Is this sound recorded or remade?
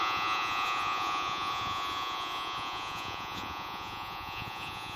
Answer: remade